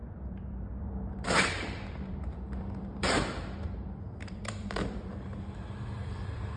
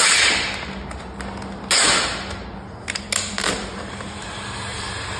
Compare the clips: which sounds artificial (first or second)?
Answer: first